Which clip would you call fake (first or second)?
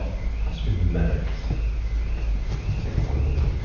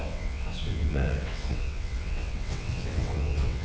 second